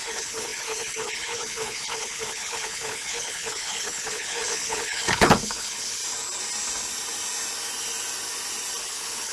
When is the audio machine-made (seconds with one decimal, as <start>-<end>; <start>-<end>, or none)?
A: 0.0-6.0; 8.8-9.3